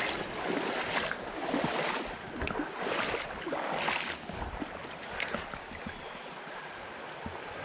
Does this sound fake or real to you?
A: real